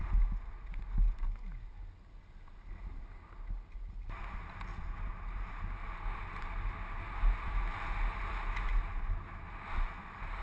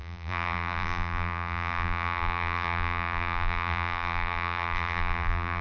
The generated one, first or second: second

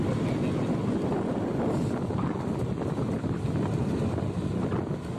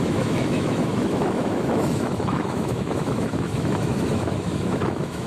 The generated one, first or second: second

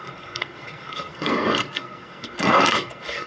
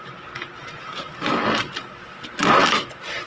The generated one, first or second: first